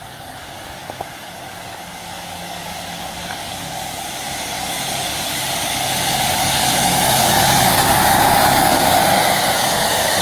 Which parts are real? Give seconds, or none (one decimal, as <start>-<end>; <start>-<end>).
9.0-9.6